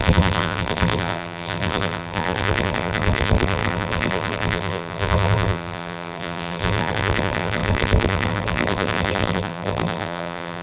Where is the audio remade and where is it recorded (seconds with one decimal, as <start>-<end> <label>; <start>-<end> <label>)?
0.0-10.6 remade